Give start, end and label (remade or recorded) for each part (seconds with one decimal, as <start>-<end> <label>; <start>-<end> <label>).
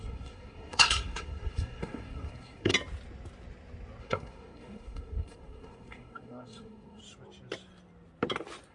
0.0-2.7 remade; 2.7-4.0 recorded; 4.0-7.0 remade; 7.0-8.7 recorded